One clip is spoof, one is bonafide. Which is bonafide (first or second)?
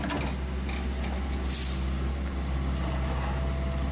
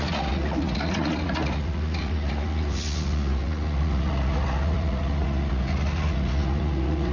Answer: first